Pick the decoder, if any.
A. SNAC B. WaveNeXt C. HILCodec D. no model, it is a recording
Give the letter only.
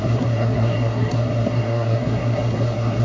A